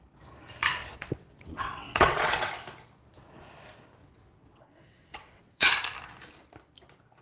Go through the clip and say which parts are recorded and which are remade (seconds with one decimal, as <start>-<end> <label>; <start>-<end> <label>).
0.0-0.8 recorded; 0.8-2.5 remade; 2.5-4.0 recorded; 4.0-5.7 remade; 5.7-7.2 recorded